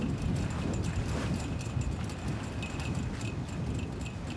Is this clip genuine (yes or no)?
yes